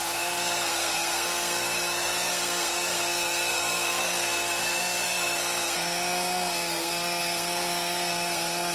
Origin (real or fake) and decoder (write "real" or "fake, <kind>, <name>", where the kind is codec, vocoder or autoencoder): fake, codec, SNAC